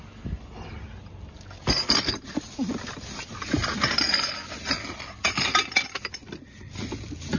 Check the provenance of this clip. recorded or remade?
recorded